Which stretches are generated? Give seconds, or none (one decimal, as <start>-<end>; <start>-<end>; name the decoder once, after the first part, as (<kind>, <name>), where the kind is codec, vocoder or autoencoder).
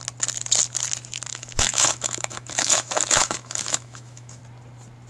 1.3-4.4 (autoencoder, DAC-VAE)